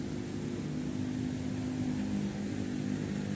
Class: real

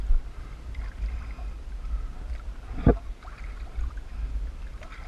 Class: real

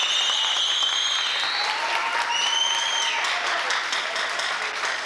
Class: real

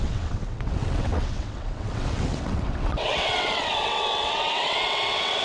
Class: fake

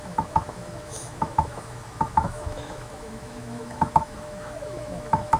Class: fake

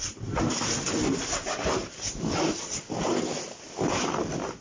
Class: real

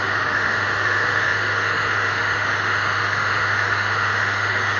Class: fake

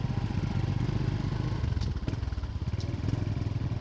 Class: real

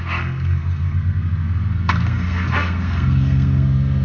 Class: fake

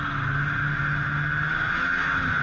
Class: real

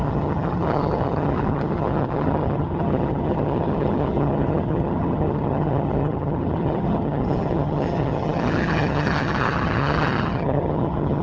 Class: fake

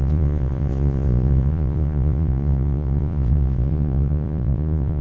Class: fake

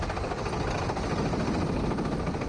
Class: real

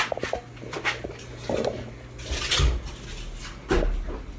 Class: real